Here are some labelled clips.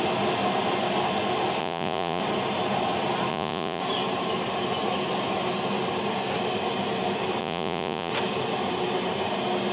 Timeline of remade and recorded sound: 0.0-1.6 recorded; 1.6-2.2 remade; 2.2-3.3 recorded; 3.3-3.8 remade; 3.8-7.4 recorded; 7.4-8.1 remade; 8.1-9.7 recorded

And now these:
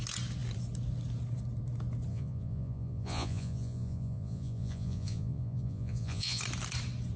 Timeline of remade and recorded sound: 0.0-2.1 recorded; 2.1-6.4 remade; 6.4-7.2 recorded

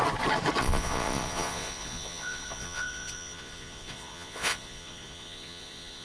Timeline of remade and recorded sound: 0.0-0.6 recorded; 0.6-6.0 remade